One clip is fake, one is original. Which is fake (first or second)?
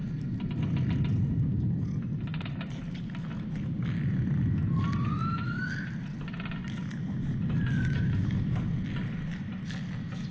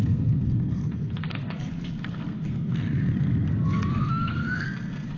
second